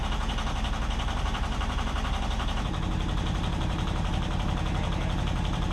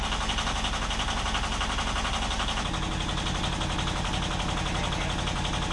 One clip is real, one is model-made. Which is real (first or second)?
second